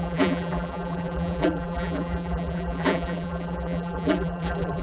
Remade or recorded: remade